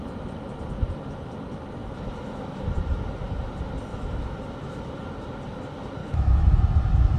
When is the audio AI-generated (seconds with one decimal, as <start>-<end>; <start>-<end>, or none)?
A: 1.8-2.7; 3.9-5.0; 6.0-6.6

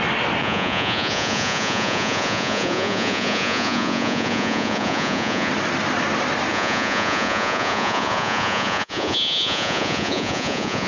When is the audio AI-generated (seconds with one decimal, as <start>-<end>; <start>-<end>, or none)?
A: 0.4-5.5; 6.5-10.9

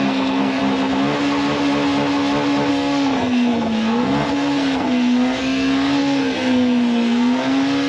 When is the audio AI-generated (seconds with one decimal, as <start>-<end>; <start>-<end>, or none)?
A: 0.0-0.6; 2.7-7.9

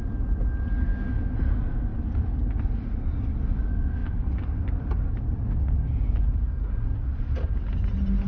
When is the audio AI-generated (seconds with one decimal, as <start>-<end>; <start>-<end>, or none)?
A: none

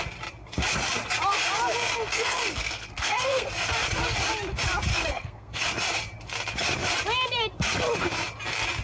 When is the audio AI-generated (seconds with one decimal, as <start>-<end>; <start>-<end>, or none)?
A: 2.1-3.5; 4.9-5.6

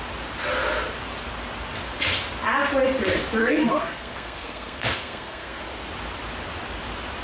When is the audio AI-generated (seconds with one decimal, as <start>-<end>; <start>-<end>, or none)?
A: 3.4-5.6